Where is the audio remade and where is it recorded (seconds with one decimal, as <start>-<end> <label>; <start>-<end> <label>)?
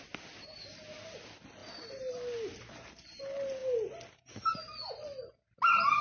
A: 0.0-6.0 recorded